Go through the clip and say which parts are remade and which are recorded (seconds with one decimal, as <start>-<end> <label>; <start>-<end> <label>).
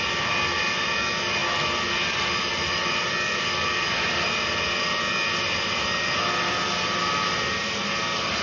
0.0-8.4 recorded